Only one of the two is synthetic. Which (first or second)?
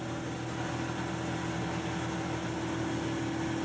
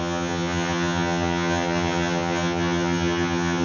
second